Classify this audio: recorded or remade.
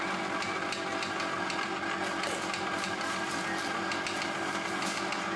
recorded